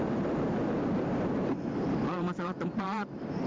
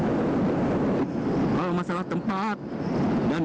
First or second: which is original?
second